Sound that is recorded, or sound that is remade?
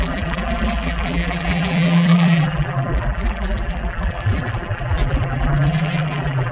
remade